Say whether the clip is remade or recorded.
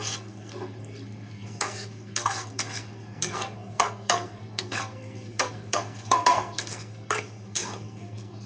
remade